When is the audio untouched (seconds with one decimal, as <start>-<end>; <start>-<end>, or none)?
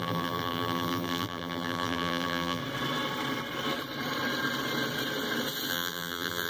2.6-5.7